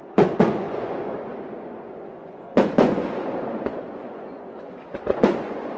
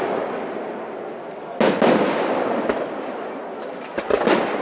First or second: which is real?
second